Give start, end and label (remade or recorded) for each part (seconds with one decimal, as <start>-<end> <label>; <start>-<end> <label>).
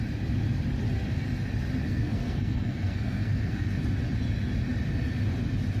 0.0-1.8 recorded; 1.8-3.8 remade; 3.8-5.8 recorded